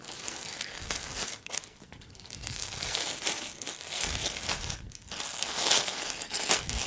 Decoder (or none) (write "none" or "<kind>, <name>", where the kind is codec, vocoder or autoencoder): codec, SNAC